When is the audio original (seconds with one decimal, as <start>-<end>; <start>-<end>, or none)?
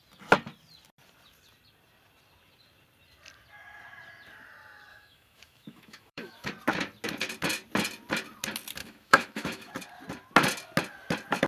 0.0-4.9; 6.5-8.8; 9.7-11.5